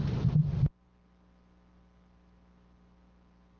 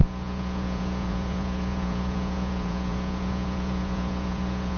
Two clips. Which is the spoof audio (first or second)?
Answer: second